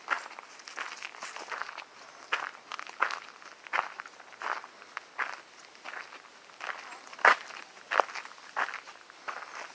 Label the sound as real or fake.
real